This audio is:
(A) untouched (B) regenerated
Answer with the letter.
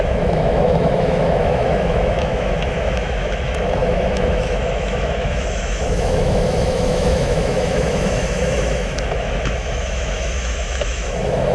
B